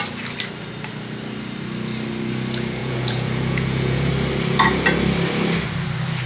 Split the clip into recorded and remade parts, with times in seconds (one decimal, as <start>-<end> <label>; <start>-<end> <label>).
0.0-2.8 recorded; 2.8-4.1 remade; 4.1-6.3 recorded